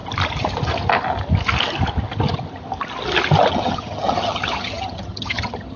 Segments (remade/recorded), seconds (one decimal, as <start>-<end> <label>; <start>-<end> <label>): 0.0-3.5 recorded; 3.5-5.8 remade